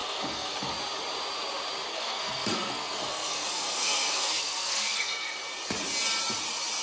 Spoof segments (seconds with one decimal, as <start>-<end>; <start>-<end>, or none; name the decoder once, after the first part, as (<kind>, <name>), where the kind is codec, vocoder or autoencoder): 0.0-0.7 (codec, SNAC); 1.9-5.4